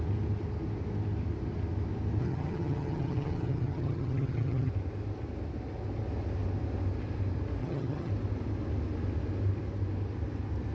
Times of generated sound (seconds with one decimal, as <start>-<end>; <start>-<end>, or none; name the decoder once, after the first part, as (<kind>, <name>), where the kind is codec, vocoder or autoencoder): 2.2-4.7 (vocoder, HiFi-GAN); 7.6-8.1